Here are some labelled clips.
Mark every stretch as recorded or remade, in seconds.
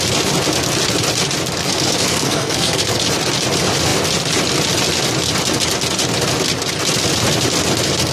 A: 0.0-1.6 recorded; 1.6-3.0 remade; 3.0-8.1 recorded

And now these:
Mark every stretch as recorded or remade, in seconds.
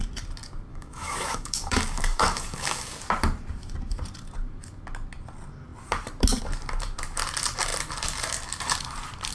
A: 0.0-0.7 recorded; 0.7-3.0 remade; 3.0-9.3 recorded